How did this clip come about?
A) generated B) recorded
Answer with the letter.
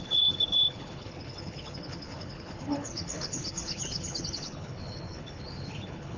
A